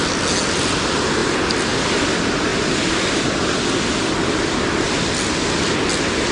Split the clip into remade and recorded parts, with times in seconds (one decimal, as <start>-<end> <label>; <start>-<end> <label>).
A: 0.0-6.3 recorded